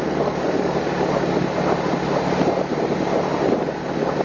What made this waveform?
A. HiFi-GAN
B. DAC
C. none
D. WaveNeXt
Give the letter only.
C